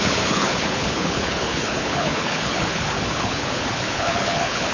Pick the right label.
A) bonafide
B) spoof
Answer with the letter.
B